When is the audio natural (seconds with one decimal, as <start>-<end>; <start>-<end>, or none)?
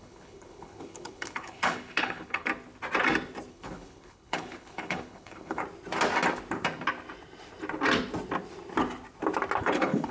2.5-3.5; 5.6-9.6